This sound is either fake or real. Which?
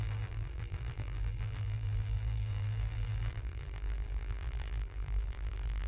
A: fake